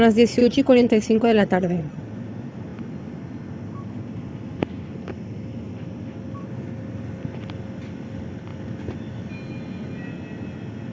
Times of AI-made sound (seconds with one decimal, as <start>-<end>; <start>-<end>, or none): 0.4-2.0